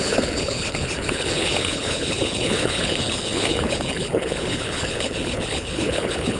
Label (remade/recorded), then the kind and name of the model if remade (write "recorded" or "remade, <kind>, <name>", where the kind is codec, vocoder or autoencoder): remade, codec, HILCodec